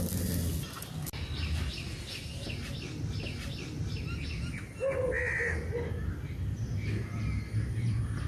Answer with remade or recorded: recorded